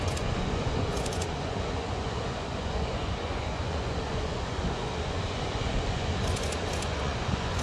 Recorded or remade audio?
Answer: remade